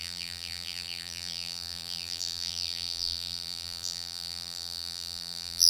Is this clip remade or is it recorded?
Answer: remade